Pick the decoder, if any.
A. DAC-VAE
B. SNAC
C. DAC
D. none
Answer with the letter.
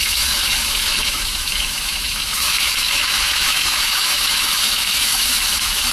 A